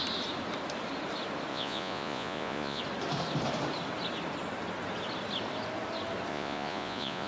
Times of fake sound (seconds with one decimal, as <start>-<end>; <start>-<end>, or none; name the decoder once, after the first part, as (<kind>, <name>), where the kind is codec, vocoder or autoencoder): 1.5-2.8 (vocoder, Vocos); 6.3-7.3